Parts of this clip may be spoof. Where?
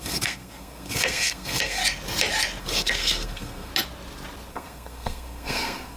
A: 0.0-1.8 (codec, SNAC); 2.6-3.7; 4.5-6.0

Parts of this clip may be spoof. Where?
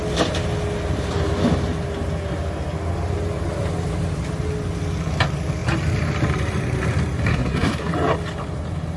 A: 7.3-7.9 (codec, SNAC)